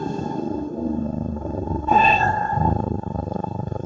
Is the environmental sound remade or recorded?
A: remade